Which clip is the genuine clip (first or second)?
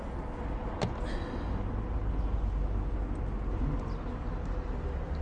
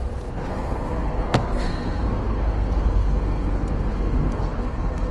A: first